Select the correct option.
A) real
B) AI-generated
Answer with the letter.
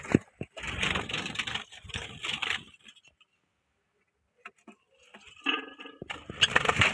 A